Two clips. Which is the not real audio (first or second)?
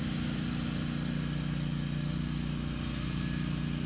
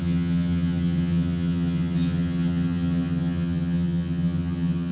second